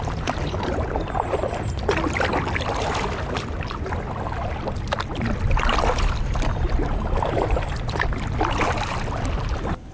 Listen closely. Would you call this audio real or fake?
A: real